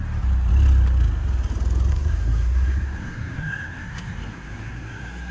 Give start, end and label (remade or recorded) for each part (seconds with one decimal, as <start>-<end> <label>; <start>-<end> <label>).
0.0-1.9 recorded; 1.9-5.3 remade